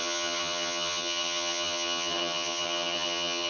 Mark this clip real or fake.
fake